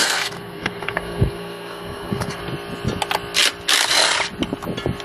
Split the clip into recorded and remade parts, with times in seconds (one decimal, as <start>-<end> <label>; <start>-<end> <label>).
0.0-2.4 remade; 2.4-5.0 recorded